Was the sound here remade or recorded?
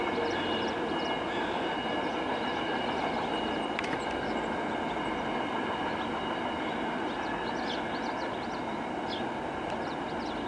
recorded